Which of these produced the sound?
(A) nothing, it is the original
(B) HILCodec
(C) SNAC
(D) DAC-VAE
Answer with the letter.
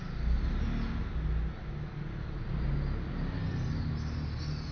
A